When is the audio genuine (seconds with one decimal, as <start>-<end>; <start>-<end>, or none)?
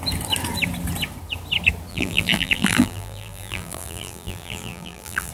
0.0-1.9